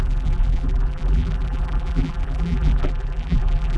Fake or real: fake